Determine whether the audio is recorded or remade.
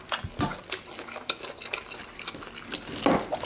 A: recorded